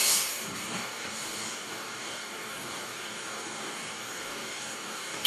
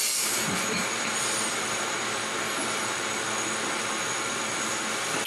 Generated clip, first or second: first